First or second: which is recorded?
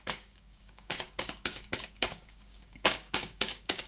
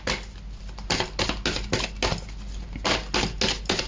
second